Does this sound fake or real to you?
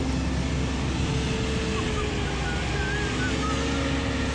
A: real